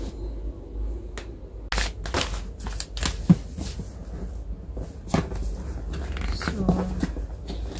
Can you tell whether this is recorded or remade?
recorded